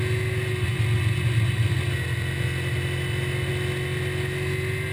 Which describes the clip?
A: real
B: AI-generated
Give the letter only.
A